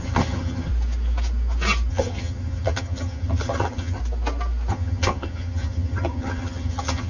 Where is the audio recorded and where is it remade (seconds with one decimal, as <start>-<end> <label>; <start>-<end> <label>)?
0.0-0.7 remade; 0.7-1.9 recorded; 1.9-4.0 remade; 4.0-4.7 recorded; 4.7-7.1 remade